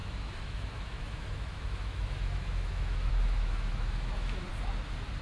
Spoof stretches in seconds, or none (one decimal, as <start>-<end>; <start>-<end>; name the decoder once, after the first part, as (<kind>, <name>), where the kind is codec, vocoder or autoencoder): 0.0-4.5 (autoencoder, DAC-VAE)